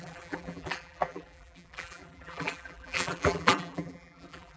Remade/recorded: remade